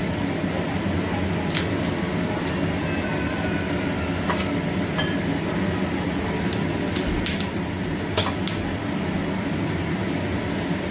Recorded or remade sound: recorded